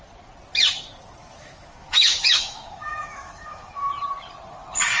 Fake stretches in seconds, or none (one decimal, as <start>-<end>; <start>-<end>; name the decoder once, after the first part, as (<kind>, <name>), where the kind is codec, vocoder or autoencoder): 1.2-3.9 (autoencoder, DAC-VAE)